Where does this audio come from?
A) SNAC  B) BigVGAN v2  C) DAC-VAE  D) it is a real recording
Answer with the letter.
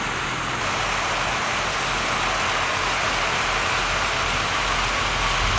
D